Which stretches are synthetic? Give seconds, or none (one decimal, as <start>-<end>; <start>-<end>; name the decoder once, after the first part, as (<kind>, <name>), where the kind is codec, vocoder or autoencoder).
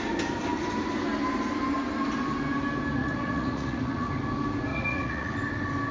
3.0-4.1 (vocoder, Vocos); 4.7-5.3